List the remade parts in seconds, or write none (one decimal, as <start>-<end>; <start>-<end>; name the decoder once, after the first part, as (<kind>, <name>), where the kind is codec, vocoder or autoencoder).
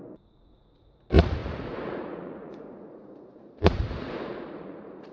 0.0-5.1 (vocoder, Vocos)